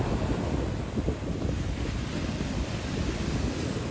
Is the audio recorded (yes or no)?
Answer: yes